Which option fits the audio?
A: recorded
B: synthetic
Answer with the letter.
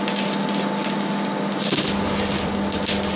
A